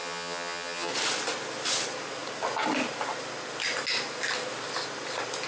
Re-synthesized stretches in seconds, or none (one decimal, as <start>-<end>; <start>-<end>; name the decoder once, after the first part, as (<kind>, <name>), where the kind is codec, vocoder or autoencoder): 0.0-0.9 (vocoder, HiFi-GAN)